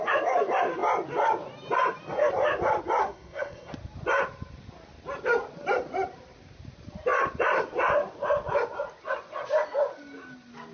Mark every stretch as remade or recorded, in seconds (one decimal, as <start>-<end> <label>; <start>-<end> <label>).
0.0-3.0 recorded; 3.0-3.7 remade; 3.7-10.7 recorded